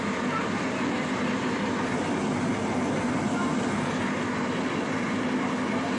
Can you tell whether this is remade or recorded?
recorded